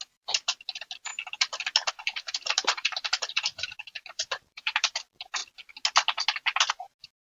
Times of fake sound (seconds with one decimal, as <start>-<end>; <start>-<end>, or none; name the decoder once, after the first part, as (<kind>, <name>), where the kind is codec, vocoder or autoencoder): 0.0-1.1 (vocoder, BigVGAN v2); 1.9-5.4; 6.7-7.3